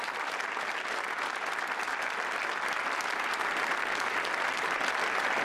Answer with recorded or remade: recorded